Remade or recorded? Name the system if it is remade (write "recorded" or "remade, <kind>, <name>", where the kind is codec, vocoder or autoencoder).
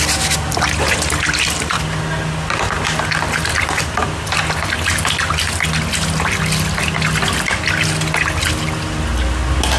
recorded